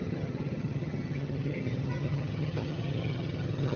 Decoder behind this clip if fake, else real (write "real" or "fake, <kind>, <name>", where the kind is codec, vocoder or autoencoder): fake, vocoder, HiFi-GAN